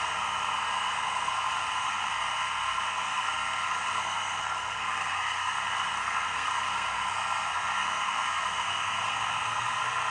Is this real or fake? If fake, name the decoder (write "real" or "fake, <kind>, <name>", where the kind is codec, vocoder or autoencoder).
fake, codec, SNAC